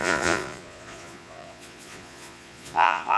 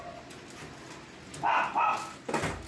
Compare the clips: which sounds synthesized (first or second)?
first